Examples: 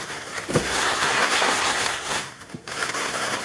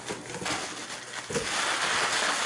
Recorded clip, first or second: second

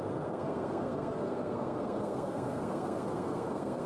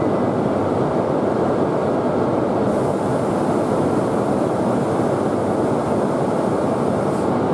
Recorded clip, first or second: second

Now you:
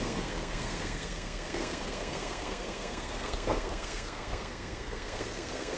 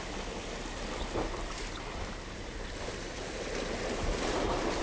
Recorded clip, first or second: second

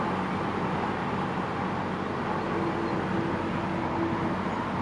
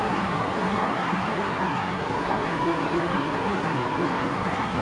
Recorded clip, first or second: first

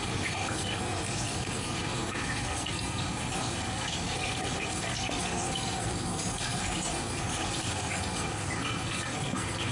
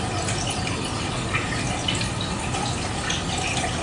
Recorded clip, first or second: second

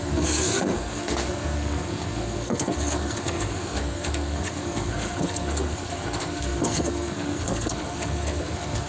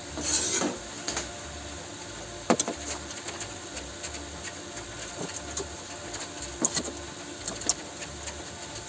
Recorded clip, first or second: second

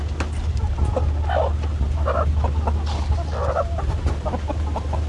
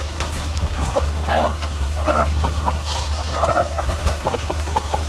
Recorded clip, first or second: first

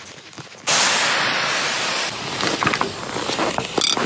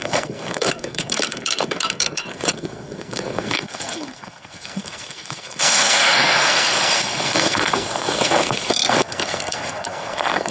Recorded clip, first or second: first